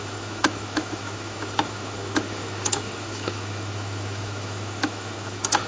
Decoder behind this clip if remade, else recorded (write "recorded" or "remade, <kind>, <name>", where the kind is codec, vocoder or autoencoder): remade, autoencoder, DAC-VAE